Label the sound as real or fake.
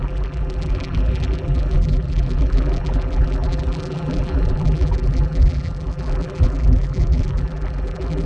fake